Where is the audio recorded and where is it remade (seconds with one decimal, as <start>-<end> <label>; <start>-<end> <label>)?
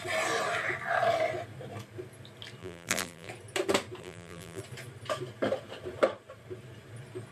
0.0-2.6 recorded; 2.6-3.3 remade; 3.3-4.0 recorded; 4.0-4.6 remade; 4.6-7.3 recorded